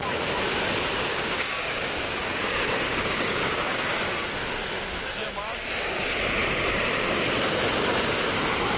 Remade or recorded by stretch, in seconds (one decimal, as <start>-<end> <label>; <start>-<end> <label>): 0.0-1.1 recorded; 1.1-4.0 remade; 4.0-8.8 recorded